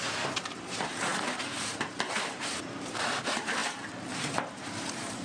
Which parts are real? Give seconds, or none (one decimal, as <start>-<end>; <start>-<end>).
3.6-4.2